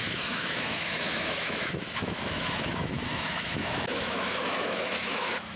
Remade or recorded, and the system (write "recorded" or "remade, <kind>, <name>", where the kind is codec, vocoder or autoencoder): remade, autoencoder, DAC-VAE